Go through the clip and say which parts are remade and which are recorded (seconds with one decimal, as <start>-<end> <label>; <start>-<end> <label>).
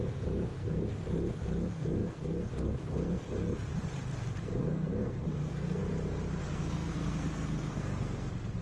0.0-3.7 remade; 3.7-4.4 recorded; 4.4-5.8 remade; 5.8-6.4 recorded; 6.4-8.6 remade